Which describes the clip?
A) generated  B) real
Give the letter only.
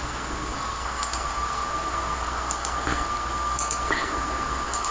A